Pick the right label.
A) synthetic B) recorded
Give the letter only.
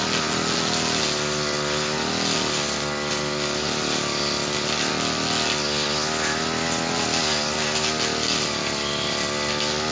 B